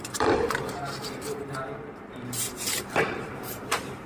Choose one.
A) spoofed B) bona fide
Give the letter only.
A